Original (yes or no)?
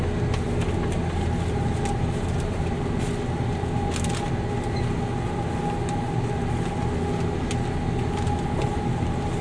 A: yes